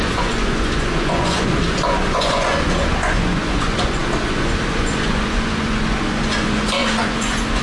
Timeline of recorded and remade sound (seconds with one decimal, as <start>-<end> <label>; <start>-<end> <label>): 0.0-7.6 remade